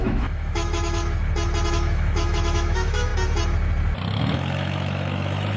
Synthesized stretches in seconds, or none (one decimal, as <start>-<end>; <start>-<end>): 0.0-1.0; 1.7-3.1; 4.2-5.6